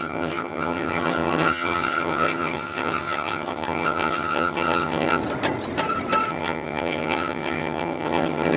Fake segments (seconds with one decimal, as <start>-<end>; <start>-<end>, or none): 0.0-5.2; 6.3-8.6